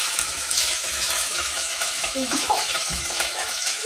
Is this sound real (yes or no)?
no